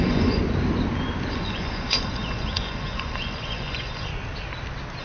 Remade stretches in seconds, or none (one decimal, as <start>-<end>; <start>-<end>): 0.0-0.4; 1.3-4.1